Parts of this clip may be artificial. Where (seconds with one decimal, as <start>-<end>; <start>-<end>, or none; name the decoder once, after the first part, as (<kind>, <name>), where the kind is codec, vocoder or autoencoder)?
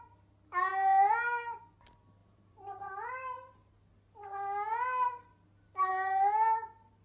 0.7-1.6 (vocoder, BigVGAN v2); 2.2-2.9